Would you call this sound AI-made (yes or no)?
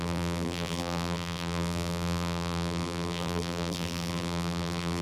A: yes